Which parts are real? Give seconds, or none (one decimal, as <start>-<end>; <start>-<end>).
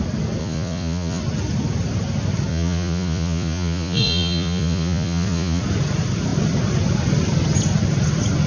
0.0-0.4; 1.2-2.5; 5.6-8.5